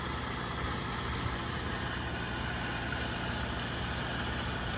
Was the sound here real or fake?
real